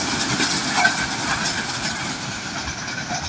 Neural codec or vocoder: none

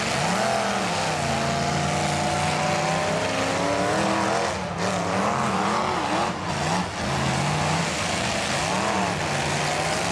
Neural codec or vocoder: none